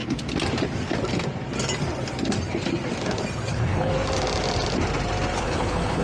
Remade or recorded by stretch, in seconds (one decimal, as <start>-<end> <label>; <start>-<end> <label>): 0.0-3.5 recorded; 3.5-3.9 remade; 3.9-5.4 recorded; 5.4-6.0 remade